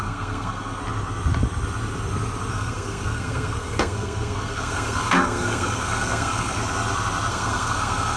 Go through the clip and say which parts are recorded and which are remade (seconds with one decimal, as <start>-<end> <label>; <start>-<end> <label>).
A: 0.0-0.8 remade; 0.8-2.5 recorded; 2.5-6.6 remade; 6.6-7.3 recorded; 7.3-8.2 remade